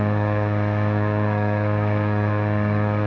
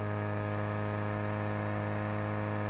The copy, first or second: first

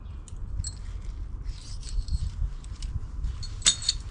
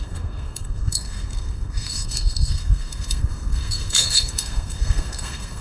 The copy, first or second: second